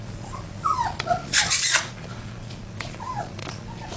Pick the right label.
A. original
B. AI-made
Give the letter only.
B